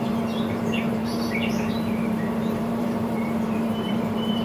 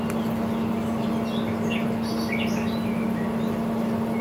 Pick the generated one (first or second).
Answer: first